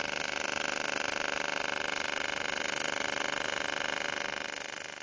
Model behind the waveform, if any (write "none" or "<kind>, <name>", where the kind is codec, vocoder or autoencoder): none